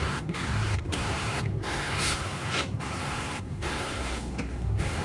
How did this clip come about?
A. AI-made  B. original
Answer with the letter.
A